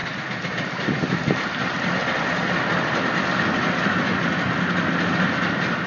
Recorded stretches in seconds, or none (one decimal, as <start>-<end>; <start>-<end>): 0.0-5.9

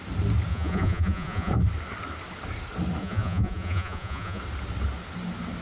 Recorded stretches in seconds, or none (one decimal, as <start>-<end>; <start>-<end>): 0.0-0.5; 1.5-3.0; 4.4-5.6

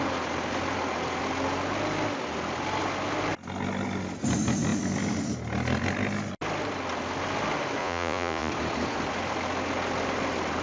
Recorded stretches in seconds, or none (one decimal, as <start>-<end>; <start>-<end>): 0.0-7.8; 8.5-10.6